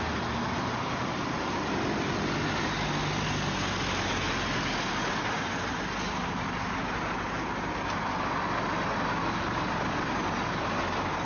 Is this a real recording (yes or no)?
yes